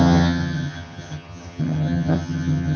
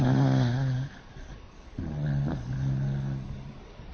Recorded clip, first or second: second